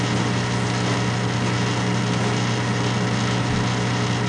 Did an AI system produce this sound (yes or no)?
no